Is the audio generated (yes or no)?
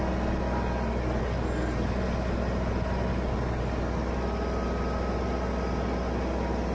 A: no